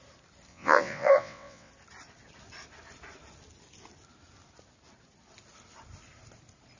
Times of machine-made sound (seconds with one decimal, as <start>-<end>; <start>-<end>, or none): 0.5-1.7